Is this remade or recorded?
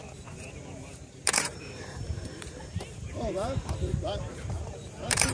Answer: remade